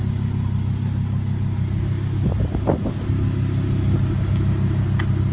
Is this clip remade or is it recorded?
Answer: recorded